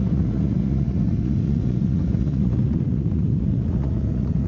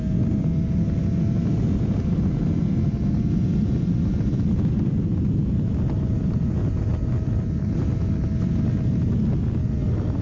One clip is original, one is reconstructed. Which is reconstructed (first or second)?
first